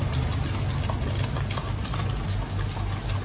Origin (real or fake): real